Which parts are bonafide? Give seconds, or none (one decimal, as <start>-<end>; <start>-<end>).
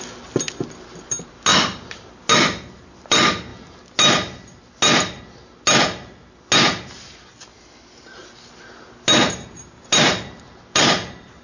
0.0-11.4